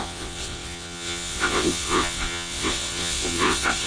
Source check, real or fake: fake